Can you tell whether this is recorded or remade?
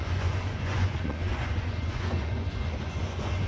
remade